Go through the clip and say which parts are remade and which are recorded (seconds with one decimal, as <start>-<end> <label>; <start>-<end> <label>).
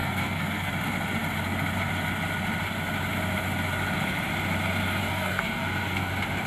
0.0-0.7 remade; 0.7-5.0 recorded; 5.0-6.1 remade; 6.1-6.5 recorded